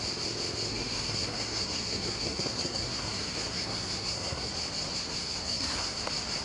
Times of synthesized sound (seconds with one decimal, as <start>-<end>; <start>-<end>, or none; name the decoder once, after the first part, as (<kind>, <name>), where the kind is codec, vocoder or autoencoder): 0.7-4.5 (codec, SNAC); 4.9-6.0